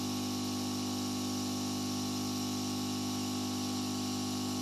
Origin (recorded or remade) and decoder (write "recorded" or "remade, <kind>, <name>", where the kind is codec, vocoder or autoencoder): recorded